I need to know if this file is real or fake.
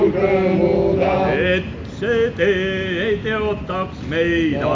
real